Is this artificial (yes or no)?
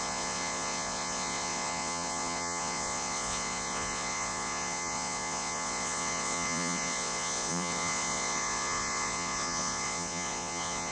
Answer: yes